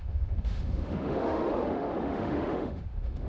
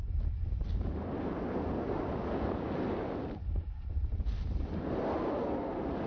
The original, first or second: second